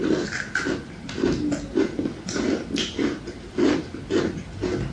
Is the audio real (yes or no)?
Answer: yes